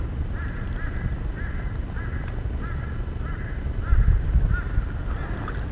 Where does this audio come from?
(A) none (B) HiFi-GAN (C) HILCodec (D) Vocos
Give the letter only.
A